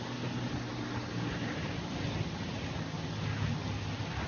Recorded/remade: recorded